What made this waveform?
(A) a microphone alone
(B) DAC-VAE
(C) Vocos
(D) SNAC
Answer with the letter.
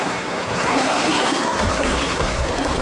D